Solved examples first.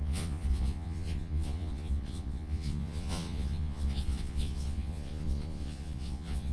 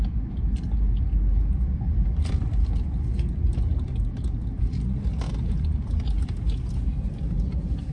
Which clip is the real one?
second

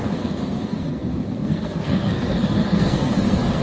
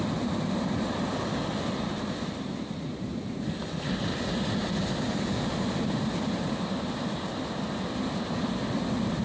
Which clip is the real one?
second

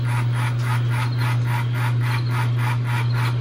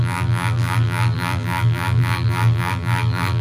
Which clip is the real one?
first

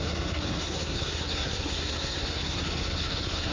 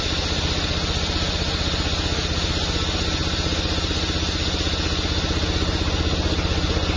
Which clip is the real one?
second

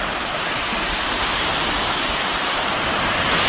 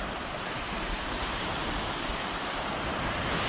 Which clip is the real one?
first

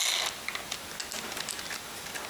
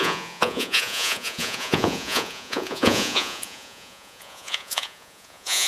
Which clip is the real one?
first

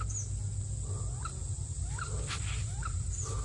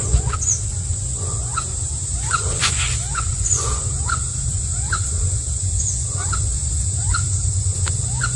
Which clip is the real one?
first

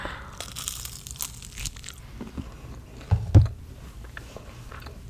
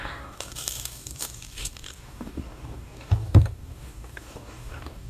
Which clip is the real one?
first